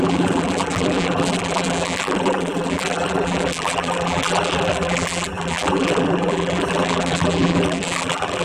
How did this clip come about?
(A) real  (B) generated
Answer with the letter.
B